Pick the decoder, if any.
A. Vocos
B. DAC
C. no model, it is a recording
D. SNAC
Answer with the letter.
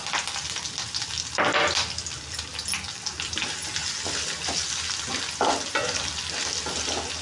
C